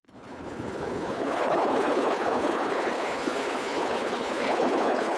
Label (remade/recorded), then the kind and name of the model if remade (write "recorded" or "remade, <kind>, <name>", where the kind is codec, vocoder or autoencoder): remade, codec, HILCodec